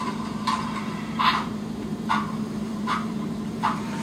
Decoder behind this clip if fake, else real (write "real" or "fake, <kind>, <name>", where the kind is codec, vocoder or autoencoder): fake, vocoder, BigVGAN v2